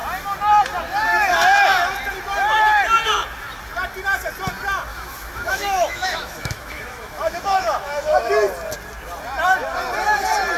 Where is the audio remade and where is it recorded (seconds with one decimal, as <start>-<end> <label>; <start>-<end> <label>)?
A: 0.0-4.9 recorded; 4.9-8.3 remade; 8.3-10.6 recorded